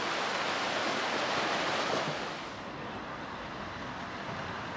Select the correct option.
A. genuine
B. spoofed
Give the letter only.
A